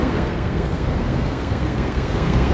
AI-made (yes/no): yes